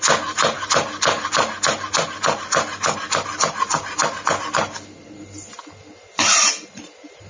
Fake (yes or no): no